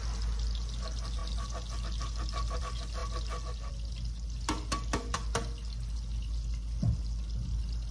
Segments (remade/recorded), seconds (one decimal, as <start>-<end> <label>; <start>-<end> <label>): 0.0-7.9 recorded